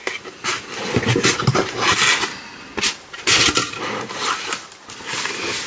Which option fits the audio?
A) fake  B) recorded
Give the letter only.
B